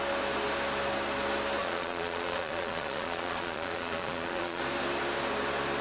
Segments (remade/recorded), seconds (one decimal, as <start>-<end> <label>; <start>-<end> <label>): 0.0-1.6 recorded; 1.6-4.6 remade; 4.6-5.8 recorded